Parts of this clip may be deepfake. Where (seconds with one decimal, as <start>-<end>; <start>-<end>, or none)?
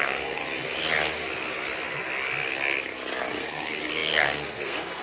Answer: 0.0-0.4; 3.4-5.0